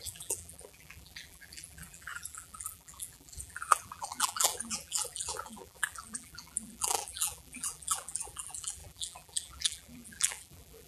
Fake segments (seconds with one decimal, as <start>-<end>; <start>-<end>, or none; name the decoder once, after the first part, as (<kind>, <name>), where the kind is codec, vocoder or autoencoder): 0.0-10.9 (vocoder, BigVGAN v2)